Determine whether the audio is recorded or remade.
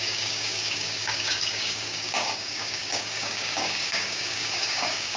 remade